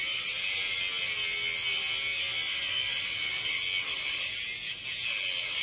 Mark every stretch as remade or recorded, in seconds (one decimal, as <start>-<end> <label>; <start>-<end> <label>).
0.0-5.6 recorded